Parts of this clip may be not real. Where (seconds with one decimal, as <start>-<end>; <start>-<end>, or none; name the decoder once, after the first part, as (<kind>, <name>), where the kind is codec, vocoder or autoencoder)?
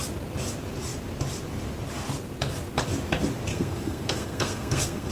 3.5-5.1 (codec, SNAC)